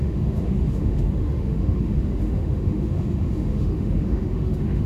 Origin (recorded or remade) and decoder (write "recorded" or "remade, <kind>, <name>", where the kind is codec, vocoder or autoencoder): remade, autoencoder, DAC-VAE